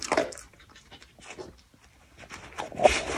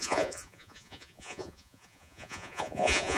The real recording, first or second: first